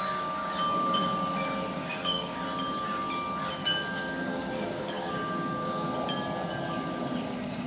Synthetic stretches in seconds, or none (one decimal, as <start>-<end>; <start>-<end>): 1.8-2.4; 3.6-5.9